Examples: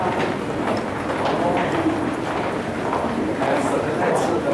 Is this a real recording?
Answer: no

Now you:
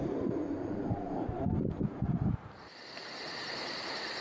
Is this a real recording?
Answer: no